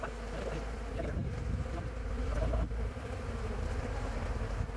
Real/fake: real